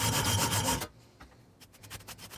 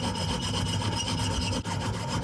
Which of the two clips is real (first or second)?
second